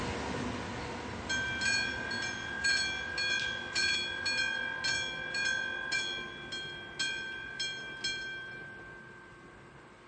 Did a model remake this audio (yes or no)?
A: no